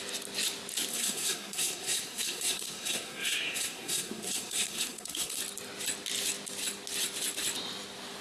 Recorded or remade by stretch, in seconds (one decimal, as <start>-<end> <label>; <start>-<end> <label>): 0.0-0.9 recorded; 0.9-5.4 remade; 5.4-8.2 recorded